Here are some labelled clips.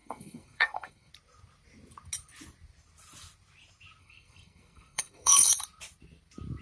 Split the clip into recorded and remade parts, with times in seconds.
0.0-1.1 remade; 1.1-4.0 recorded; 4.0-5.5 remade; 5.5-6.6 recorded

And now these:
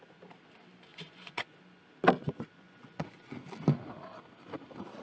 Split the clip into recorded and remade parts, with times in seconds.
0.0-0.9 recorded; 0.9-1.6 remade; 1.6-2.2 recorded; 2.2-3.3 remade; 3.3-5.0 recorded